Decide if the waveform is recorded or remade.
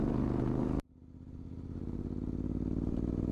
recorded